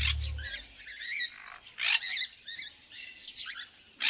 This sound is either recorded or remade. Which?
recorded